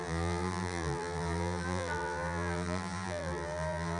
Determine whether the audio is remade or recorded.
remade